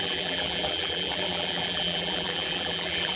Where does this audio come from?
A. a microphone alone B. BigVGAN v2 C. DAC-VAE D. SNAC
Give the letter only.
B